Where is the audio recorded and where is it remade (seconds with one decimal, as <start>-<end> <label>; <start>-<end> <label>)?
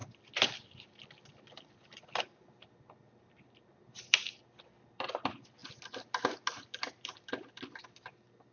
0.0-5.6 remade; 5.6-6.7 recorded; 6.7-8.5 remade